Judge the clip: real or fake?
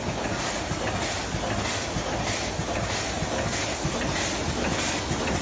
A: real